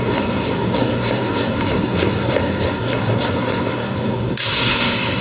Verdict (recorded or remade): remade